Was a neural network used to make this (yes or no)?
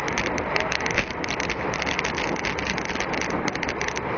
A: no